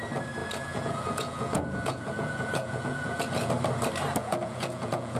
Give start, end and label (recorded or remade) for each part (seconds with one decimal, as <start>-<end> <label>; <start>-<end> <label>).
0.0-0.4 recorded; 0.4-3.5 remade; 3.5-4.2 recorded; 4.2-5.2 remade